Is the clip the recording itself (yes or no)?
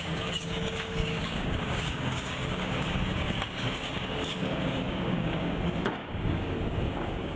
no